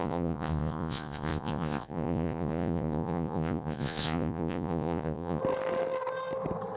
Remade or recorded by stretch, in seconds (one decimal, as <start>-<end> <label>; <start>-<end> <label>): 0.0-5.4 remade; 5.4-6.8 recorded